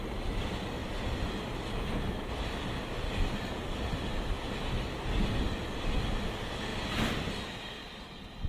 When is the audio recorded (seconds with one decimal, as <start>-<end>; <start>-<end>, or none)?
0.0-8.5